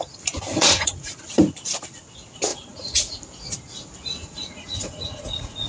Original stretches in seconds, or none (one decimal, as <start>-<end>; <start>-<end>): 0.0-0.5; 1.2-2.5; 3.1-4.2